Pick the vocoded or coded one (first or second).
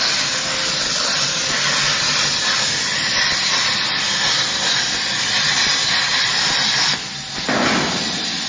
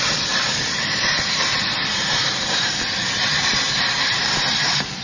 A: second